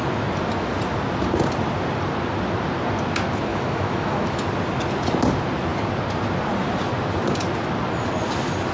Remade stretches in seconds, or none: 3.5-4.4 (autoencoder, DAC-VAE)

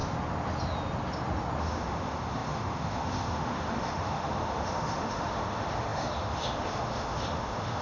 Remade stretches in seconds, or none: 1.6-7.8 (autoencoder, DAC-VAE)

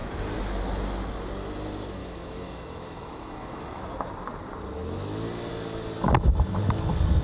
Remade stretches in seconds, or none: 2.0-3.8 (autoencoder, DAC-VAE)